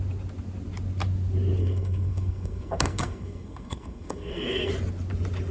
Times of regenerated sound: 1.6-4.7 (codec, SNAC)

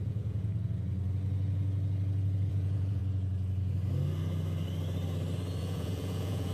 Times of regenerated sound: 0.0-0.5 (vocoder, Vocos); 2.5-3.0; 5.6-6.5

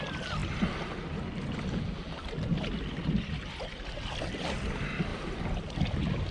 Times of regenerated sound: none